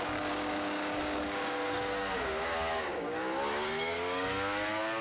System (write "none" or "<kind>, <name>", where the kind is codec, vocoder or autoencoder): codec, DAC